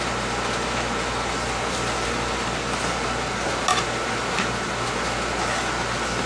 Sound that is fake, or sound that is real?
real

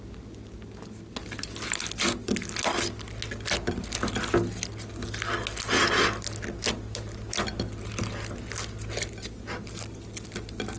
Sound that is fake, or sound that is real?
real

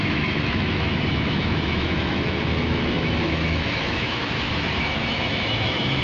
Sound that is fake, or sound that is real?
fake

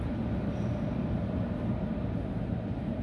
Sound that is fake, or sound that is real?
fake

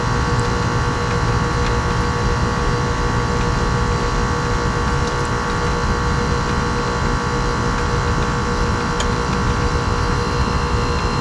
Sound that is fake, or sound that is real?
real